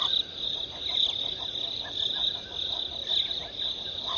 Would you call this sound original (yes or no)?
yes